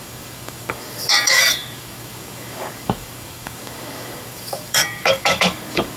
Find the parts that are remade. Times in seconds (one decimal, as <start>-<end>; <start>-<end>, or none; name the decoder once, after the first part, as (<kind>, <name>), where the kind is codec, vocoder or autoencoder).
0.0-6.0 (codec, DAC)